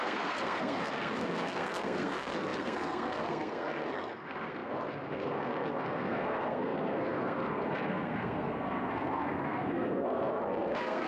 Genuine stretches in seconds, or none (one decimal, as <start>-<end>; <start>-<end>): none